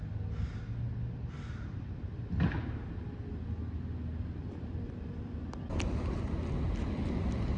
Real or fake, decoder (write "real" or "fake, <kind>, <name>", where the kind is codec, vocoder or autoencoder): real